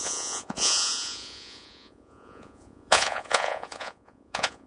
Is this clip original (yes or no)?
no